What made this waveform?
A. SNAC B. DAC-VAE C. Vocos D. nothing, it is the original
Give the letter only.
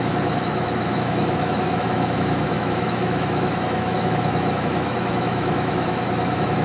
B